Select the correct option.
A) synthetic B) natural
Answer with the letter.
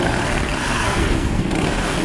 A